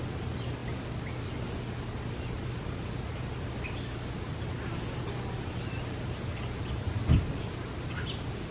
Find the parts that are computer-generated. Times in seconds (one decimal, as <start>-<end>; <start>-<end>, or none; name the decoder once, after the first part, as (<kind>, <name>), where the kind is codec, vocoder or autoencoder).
none